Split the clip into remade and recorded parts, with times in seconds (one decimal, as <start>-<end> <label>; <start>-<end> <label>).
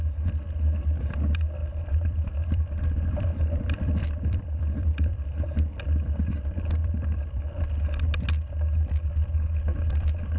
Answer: 0.0-1.6 recorded; 1.6-5.8 remade; 5.8-6.8 recorded; 6.8-7.5 remade; 7.5-10.4 recorded